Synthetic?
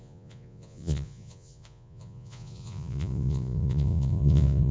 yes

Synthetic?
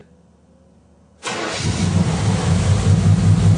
no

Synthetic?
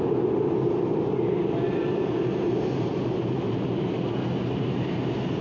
no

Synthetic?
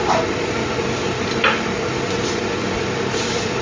no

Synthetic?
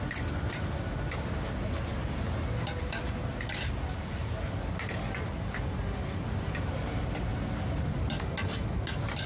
no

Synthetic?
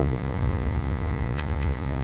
yes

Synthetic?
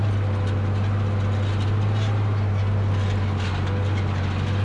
no